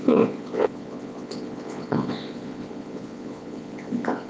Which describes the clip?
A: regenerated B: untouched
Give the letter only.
A